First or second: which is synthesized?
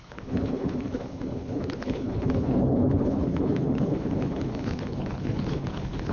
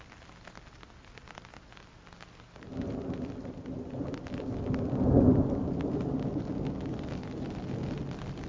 first